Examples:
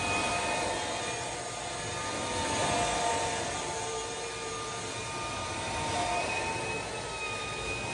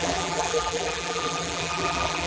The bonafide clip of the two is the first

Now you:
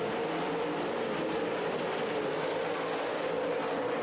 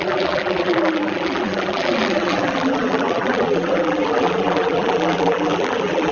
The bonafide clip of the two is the first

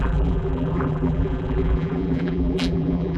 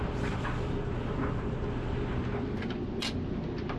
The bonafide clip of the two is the second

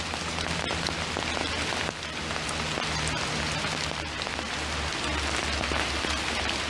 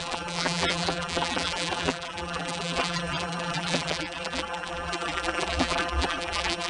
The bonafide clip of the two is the first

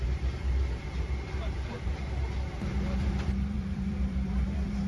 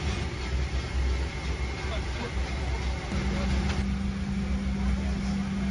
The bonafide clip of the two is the second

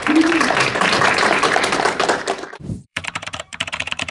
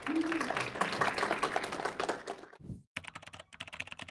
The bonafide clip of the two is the second